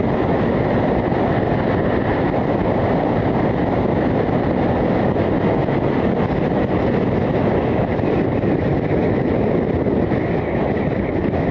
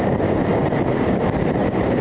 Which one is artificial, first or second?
second